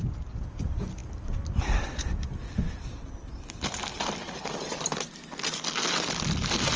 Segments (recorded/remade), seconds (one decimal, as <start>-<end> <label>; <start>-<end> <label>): 0.0-6.8 recorded